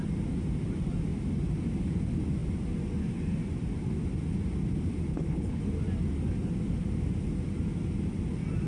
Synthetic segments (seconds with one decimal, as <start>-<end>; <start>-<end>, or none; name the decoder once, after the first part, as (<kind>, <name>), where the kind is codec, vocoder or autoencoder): 5.1-5.6 (codec, HILCodec)